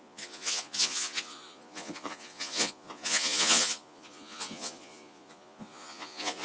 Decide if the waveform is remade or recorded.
remade